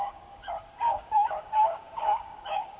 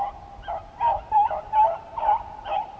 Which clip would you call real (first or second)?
second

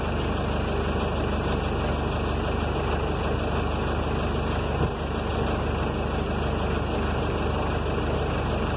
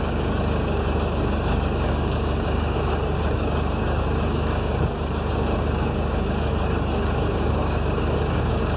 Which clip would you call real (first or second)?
first